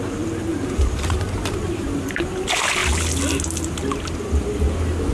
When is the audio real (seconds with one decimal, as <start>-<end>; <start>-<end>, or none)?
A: 0.0-0.5; 2.0-5.1

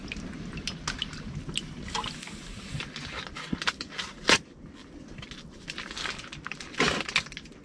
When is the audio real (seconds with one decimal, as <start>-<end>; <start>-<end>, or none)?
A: 0.0-7.6